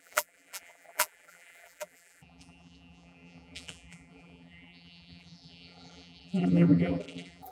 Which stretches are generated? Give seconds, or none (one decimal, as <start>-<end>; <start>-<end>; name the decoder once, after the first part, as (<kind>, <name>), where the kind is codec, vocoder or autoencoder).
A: 0.0-7.5 (vocoder, BigVGAN v2)